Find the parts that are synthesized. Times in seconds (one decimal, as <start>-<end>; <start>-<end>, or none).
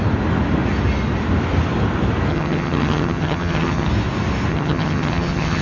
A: 2.3-3.9; 4.5-5.6